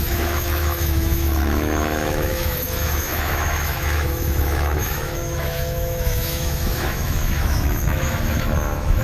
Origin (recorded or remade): remade